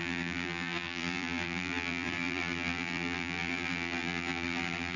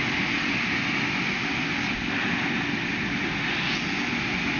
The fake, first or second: first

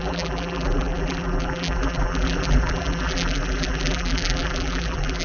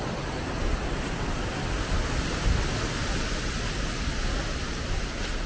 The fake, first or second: first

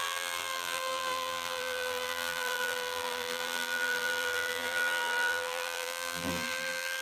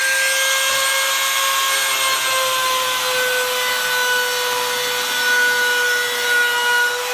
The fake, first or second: first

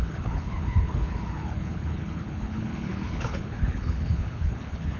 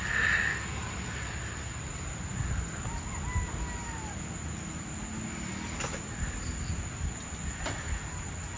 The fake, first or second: first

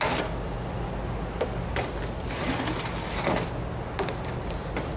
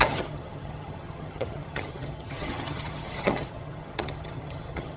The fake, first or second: second